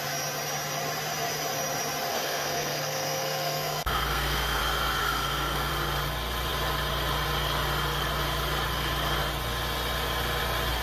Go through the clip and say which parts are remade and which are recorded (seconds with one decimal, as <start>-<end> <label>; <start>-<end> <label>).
0.0-2.1 recorded; 2.1-4.6 remade; 4.6-5.0 recorded; 5.0-5.7 remade; 5.7-10.8 recorded